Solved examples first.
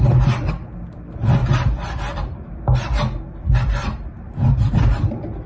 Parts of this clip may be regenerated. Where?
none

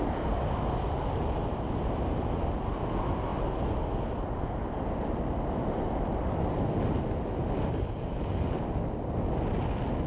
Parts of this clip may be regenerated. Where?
none

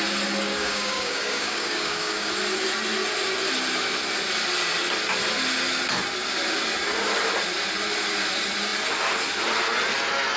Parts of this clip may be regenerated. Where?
0.5-2.3 (codec, DAC)

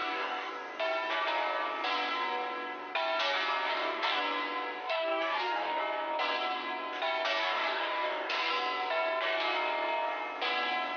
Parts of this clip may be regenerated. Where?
0.0-0.5 (codec, DAC); 3.7-4.2; 4.8-5.8; 7.4-8.5

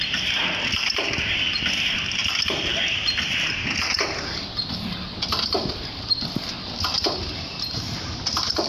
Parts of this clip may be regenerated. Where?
none

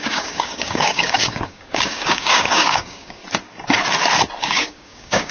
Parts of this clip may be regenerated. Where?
0.0-3.2 (codec, DAC); 4.4-5.3

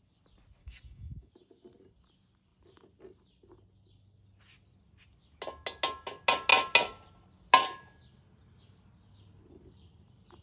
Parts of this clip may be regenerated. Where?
0.6-1.3 (codec, DAC)

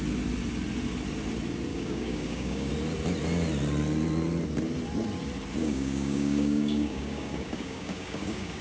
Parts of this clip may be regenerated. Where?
1.7-2.7 (codec, DAC); 5.6-8.6